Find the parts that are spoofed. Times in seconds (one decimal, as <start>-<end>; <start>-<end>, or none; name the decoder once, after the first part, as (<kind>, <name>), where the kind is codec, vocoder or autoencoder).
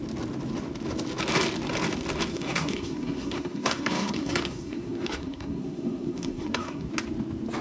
2.3-6.9 (codec, SNAC)